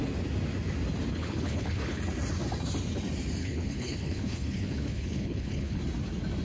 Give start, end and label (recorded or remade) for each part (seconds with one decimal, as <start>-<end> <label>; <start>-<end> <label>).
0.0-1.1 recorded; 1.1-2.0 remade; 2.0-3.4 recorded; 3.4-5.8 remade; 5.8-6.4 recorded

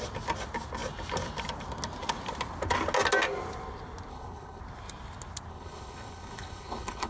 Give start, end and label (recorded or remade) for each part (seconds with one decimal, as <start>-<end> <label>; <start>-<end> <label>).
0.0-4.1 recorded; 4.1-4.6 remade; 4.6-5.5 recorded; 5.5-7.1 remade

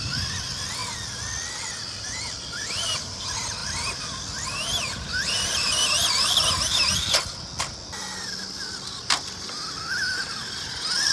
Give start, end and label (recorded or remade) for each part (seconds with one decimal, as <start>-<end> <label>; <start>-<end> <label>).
0.0-11.1 recorded